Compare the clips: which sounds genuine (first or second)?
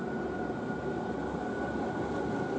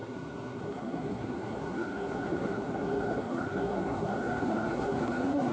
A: first